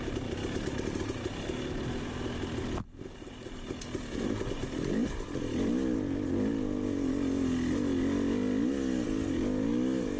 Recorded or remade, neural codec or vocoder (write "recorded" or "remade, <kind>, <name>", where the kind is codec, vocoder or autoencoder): recorded